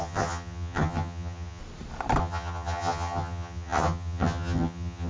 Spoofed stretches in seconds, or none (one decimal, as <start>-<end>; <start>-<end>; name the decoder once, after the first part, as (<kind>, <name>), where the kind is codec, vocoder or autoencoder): 0.0-1.6 (vocoder, HiFi-GAN); 2.2-5.1